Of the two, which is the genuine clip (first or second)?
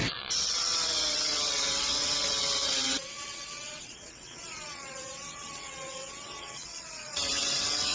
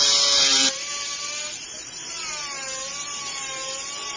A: second